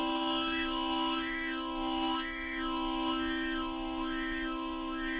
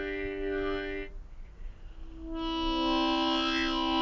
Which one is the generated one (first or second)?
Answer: first